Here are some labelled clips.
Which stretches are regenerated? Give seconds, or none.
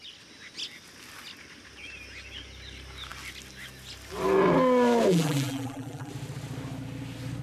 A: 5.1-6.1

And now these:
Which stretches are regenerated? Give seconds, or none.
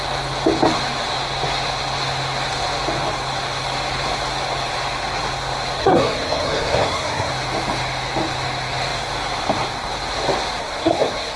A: 5.8-7.3; 10.6-11.4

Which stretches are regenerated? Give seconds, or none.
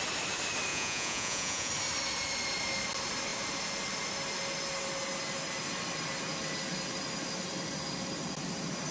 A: 0.7-1.7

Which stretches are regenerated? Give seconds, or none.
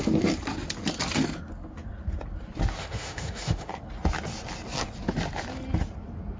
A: 2.8-3.7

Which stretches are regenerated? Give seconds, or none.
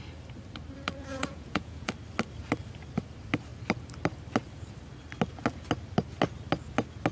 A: 1.1-1.9